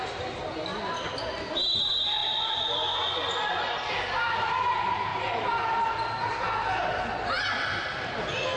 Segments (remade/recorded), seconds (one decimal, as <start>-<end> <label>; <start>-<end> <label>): 0.0-8.6 recorded